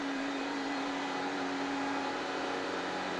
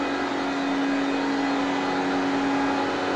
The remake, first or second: first